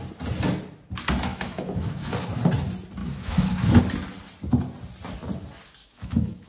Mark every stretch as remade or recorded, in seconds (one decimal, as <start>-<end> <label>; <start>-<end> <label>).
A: 0.0-1.3 recorded; 1.3-2.1 remade; 2.1-3.0 recorded; 3.0-3.8 remade; 3.8-5.8 recorded; 5.8-6.5 remade